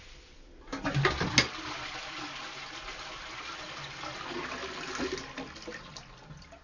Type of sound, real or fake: real